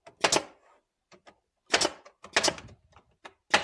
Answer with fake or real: real